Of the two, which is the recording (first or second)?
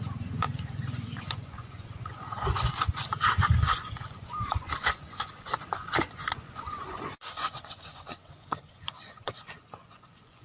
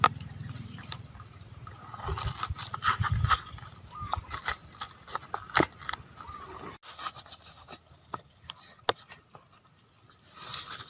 second